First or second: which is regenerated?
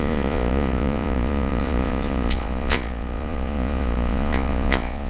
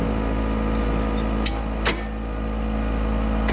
first